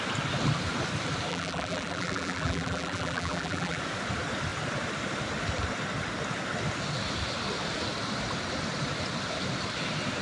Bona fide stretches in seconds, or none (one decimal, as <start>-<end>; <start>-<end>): 0.0-1.3; 3.8-10.2